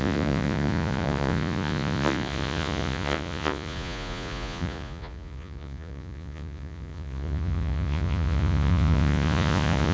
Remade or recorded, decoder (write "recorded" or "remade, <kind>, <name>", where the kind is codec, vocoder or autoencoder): remade, vocoder, Vocos